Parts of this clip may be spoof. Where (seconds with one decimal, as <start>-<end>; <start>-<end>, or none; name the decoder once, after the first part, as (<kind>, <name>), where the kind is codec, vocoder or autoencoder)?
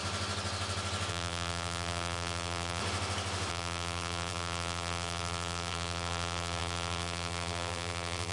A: 1.1-2.8 (vocoder, BigVGAN v2); 3.5-8.3